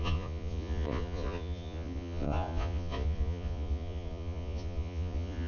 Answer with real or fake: fake